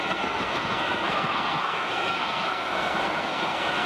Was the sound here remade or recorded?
remade